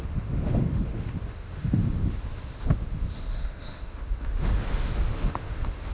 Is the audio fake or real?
fake